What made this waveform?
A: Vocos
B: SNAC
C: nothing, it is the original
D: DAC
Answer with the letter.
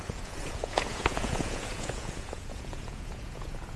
A